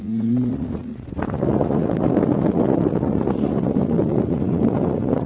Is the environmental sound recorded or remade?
remade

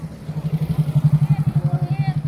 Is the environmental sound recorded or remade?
recorded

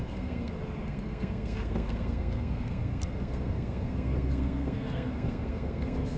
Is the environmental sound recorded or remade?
remade